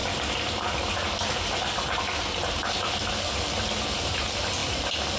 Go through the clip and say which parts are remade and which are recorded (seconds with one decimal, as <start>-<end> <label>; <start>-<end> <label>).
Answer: 0.0-5.2 recorded